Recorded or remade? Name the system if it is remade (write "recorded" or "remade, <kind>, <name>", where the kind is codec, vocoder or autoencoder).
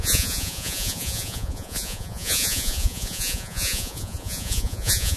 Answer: remade, vocoder, Vocos